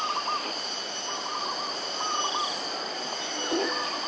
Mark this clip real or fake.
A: real